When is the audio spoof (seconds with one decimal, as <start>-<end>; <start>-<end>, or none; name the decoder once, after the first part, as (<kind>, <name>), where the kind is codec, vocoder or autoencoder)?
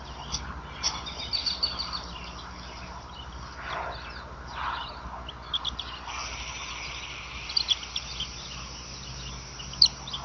none